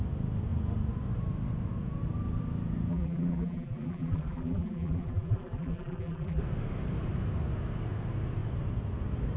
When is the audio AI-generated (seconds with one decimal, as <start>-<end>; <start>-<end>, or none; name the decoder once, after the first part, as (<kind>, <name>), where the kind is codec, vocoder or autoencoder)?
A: 2.9-6.4 (vocoder, BigVGAN v2)